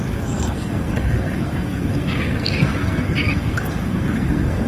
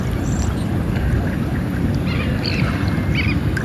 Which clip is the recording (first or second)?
second